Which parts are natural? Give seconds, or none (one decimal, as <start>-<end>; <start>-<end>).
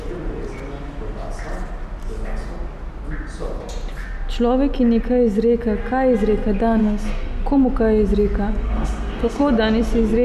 0.0-6.8; 7.4-8.5; 9.4-10.2